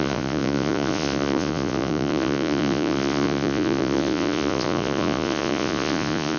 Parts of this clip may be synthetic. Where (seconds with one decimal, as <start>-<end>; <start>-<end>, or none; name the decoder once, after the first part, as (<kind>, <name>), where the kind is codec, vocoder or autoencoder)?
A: 0.0-6.4 (vocoder, Vocos)